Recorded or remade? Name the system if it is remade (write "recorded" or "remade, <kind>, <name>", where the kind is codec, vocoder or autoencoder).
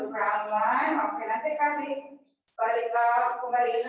remade, vocoder, BigVGAN v2